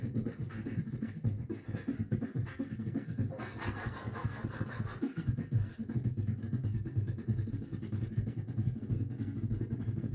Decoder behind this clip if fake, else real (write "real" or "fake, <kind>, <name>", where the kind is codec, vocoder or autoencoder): fake, codec, SNAC